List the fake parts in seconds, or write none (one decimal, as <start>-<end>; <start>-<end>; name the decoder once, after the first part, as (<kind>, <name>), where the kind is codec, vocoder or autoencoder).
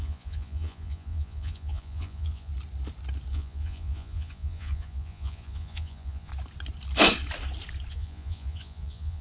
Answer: 0.0-2.5 (vocoder, Vocos); 3.3-6.3; 7.9-9.2